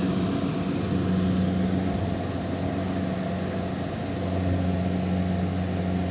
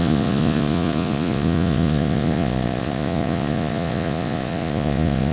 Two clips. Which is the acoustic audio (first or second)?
first